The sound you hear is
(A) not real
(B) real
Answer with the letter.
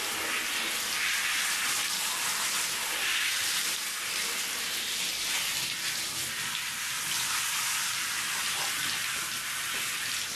B